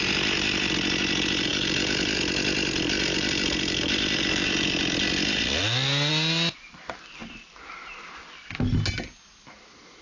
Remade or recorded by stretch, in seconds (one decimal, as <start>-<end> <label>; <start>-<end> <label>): 0.0-10.0 recorded